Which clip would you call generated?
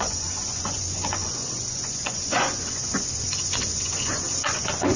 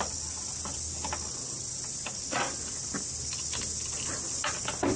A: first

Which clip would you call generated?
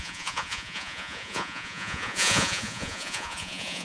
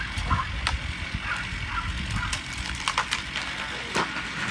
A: first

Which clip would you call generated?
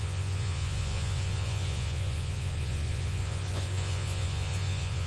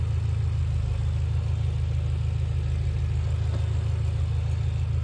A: first